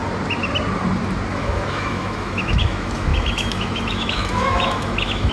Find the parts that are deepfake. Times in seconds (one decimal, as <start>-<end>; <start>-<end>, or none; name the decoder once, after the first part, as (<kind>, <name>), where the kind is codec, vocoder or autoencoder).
1.3-5.3 (autoencoder, DAC-VAE)